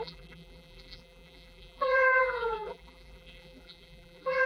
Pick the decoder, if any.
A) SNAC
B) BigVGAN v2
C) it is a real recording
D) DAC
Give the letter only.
B